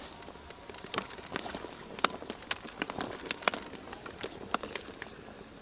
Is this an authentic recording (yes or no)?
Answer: yes